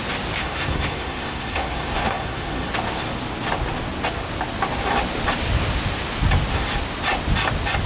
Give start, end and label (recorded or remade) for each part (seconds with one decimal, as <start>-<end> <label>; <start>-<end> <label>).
0.0-0.4 recorded; 0.4-2.7 remade; 2.7-7.9 recorded